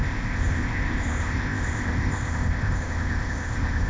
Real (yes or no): no